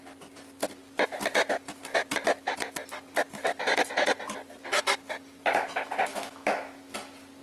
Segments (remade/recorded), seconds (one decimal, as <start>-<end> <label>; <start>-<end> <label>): 0.0-6.1 recorded; 6.1-6.8 remade; 6.8-7.4 recorded